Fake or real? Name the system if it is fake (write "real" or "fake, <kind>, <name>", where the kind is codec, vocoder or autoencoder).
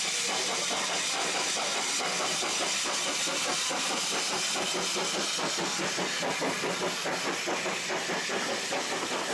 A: real